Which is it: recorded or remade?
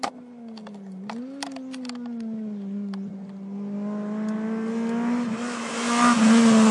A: recorded